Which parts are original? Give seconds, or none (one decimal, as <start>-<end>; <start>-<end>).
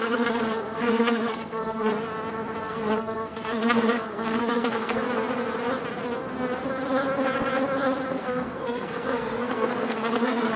1.9-2.6; 5.0-8.1